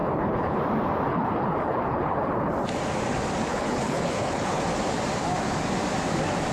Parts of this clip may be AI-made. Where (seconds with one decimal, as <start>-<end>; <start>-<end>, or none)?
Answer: 0.0-0.6; 1.1-2.5; 3.5-4.6